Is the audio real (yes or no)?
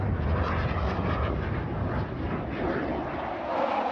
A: yes